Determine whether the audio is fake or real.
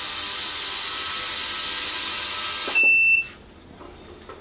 real